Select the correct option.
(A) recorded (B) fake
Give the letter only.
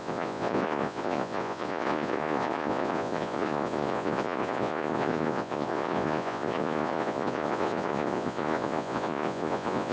B